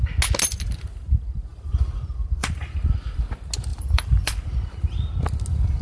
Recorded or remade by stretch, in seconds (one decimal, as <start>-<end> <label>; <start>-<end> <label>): 0.0-1.5 recorded; 1.5-3.3 remade; 3.3-3.7 recorded; 3.7-4.4 remade; 4.4-5.8 recorded